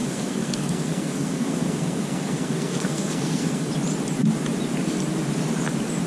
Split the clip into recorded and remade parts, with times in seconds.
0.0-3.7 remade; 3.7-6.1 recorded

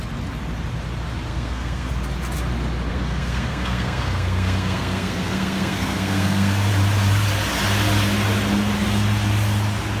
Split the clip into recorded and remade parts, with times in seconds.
0.0-1.3 recorded; 1.3-1.9 remade; 1.9-2.9 recorded; 2.9-6.7 remade; 6.7-10.0 recorded

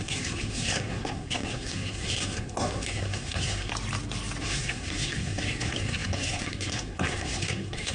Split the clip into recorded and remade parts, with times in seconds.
0.0-3.7 remade; 3.7-4.4 recorded; 4.4-7.9 remade

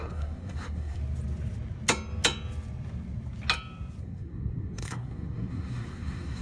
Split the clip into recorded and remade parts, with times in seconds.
0.0-1.0 remade; 1.0-4.0 recorded; 4.0-6.4 remade

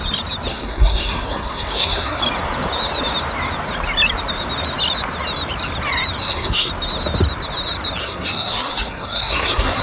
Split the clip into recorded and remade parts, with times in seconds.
0.0-0.5 recorded; 0.5-2.2 remade; 2.2-6.2 recorded; 6.2-6.7 remade; 6.7-8.0 recorded; 8.0-9.8 remade

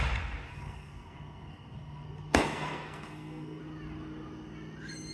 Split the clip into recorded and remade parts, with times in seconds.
0.0-0.5 recorded; 0.5-3.6 remade; 3.6-5.1 recorded